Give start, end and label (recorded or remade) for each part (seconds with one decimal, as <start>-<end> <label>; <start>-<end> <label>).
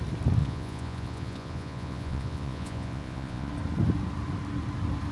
0.0-0.4 recorded; 0.4-3.5 remade; 3.5-5.1 recorded